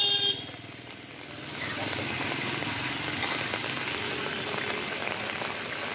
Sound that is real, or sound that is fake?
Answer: real